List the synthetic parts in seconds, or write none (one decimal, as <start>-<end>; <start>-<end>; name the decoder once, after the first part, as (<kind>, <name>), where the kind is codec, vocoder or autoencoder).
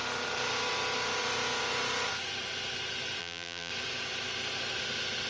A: 3.2-3.7 (vocoder, BigVGAN v2)